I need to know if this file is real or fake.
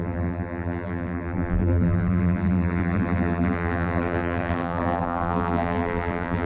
fake